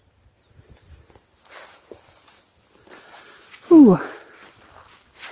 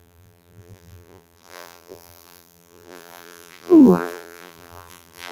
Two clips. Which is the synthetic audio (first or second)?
second